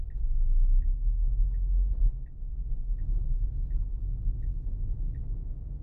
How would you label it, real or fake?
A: real